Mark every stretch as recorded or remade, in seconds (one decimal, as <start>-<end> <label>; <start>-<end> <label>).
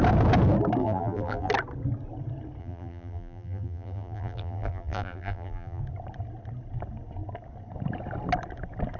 0.0-0.8 recorded; 0.8-1.5 remade; 1.5-2.6 recorded; 2.6-5.8 remade; 5.8-9.0 recorded